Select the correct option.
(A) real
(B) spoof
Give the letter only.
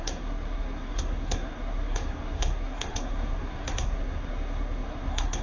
B